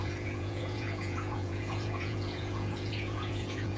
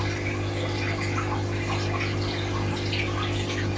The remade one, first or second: first